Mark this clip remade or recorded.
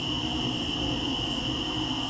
recorded